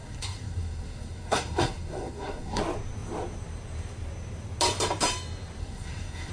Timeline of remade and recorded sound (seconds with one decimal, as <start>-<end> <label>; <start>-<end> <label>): 0.0-2.6 remade; 2.6-5.6 recorded; 5.6-6.3 remade